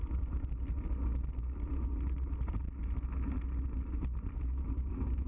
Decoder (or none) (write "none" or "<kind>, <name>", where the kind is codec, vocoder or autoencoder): none